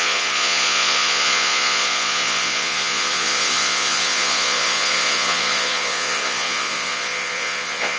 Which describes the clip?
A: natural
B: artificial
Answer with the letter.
B